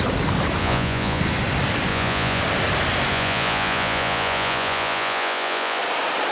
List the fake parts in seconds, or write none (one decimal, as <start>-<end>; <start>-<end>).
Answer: 0.6-1.2; 1.9-2.4; 3.1-5.8